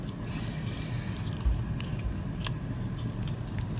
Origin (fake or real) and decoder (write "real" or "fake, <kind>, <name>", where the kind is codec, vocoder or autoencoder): real